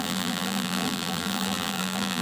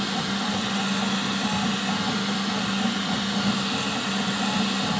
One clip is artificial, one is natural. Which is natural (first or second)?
second